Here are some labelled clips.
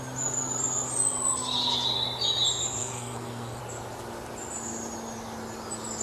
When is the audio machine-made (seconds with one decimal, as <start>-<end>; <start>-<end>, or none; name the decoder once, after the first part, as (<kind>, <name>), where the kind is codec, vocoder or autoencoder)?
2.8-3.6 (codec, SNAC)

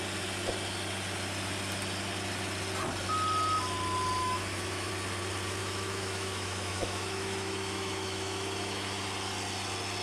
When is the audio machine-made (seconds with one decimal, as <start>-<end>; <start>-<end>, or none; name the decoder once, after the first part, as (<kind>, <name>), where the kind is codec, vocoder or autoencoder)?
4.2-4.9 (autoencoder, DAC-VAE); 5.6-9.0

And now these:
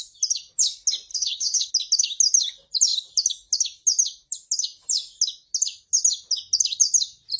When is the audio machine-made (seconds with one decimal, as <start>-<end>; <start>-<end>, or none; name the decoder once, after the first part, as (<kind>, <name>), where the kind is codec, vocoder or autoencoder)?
1.1-1.7 (codec, HILCodec)

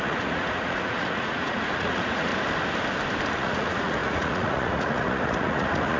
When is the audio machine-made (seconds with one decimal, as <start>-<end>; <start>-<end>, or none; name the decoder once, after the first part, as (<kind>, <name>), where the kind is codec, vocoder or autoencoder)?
0.0-2.3 (vocoder, Vocos); 3.3-6.0